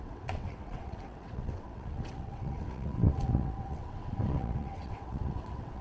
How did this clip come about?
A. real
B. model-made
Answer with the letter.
B